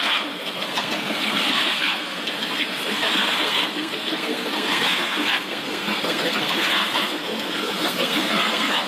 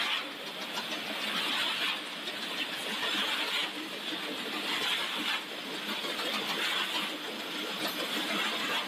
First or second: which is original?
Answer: second